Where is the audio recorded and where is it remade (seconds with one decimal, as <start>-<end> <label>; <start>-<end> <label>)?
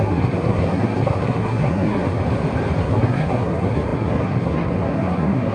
0.0-2.2 remade; 2.2-2.8 recorded; 2.8-5.5 remade